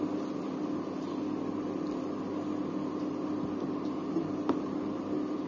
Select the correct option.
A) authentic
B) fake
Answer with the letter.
A